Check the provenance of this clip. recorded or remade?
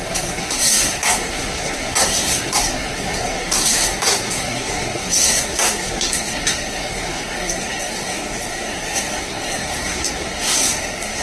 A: remade